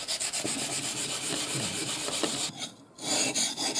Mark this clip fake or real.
real